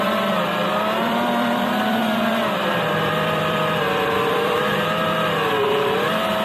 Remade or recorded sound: remade